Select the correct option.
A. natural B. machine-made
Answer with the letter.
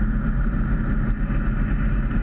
A